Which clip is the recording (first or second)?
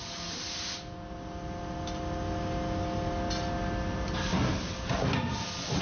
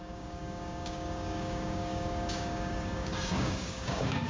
first